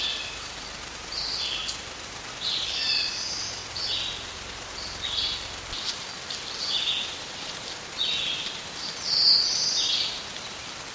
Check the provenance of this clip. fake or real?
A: real